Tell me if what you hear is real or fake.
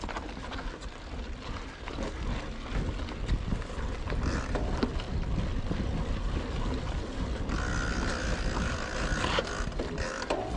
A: real